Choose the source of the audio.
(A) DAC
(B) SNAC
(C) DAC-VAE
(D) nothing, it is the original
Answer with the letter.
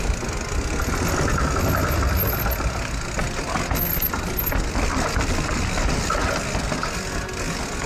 D